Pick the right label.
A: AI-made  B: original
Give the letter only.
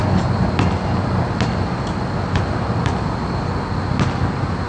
B